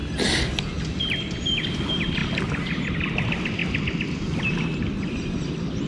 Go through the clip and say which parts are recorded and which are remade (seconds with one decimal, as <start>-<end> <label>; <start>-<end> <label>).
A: 0.0-1.7 recorded; 1.7-2.2 remade; 2.2-2.9 recorded; 2.9-3.6 remade; 3.6-5.0 recorded; 5.0-5.9 remade